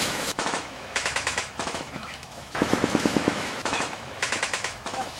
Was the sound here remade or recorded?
remade